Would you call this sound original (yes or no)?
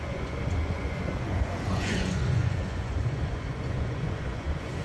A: no